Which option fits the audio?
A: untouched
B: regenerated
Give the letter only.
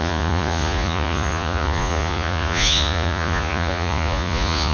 B